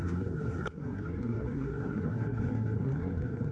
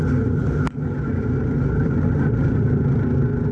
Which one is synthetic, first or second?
first